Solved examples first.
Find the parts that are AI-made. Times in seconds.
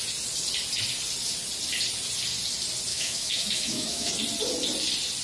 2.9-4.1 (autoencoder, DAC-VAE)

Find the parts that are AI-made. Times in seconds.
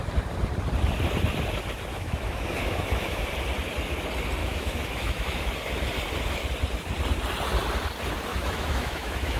1.9-3.3 (autoencoder, DAC-VAE); 4.4-5.5; 8.3-9.4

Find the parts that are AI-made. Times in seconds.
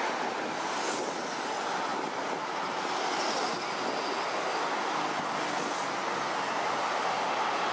none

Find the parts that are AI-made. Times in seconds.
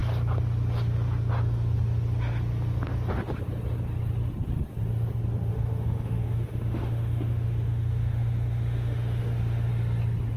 5.5-9.7 (autoencoder, DAC-VAE)